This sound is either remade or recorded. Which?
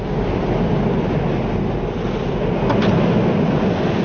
recorded